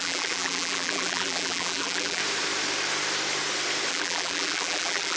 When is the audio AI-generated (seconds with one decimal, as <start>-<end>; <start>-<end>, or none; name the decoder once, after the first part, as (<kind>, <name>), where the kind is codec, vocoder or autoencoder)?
0.0-2.2 (vocoder, BigVGAN v2); 3.9-5.2

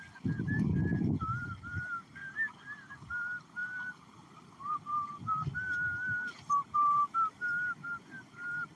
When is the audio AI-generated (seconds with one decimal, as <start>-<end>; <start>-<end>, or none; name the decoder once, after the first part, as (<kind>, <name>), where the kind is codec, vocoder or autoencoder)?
none